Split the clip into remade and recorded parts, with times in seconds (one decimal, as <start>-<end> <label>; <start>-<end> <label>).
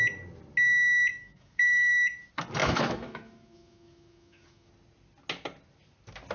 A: 0.0-1.1 recorded; 1.1-1.9 remade; 1.9-2.6 recorded; 2.6-4.7 remade; 4.7-6.3 recorded